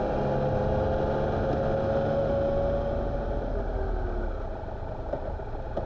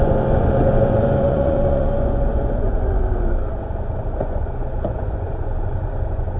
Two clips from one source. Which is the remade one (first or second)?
second